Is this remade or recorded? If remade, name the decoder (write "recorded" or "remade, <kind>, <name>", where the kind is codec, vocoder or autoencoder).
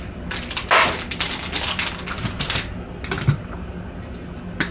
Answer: recorded